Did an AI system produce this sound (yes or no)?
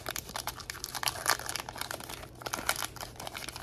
no